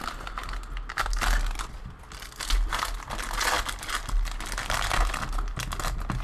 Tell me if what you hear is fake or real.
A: real